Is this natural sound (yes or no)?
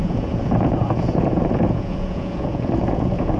no